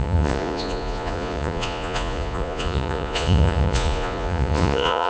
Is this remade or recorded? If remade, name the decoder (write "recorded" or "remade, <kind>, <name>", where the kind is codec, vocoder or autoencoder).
remade, vocoder, Vocos